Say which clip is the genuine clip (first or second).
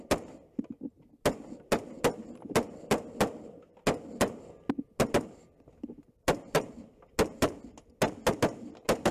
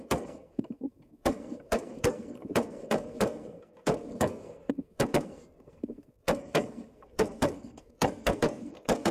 first